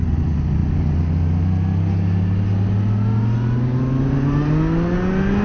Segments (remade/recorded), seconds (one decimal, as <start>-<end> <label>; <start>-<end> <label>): 0.0-5.4 recorded